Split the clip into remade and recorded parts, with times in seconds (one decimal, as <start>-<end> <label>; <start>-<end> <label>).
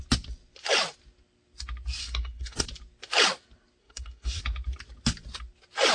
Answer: 0.0-2.0 recorded; 2.0-2.6 remade; 2.6-3.8 recorded; 3.8-4.4 remade; 4.4-5.9 recorded